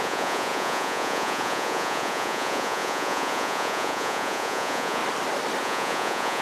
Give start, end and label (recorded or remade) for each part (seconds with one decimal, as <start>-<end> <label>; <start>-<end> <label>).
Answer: 0.0-5.0 remade; 5.0-5.6 recorded; 5.6-6.4 remade